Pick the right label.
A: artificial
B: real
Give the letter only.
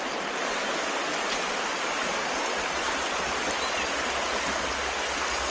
B